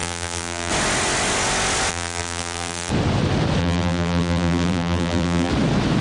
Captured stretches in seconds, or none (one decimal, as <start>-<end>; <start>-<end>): 0.7-1.9; 2.9-3.6; 5.5-6.0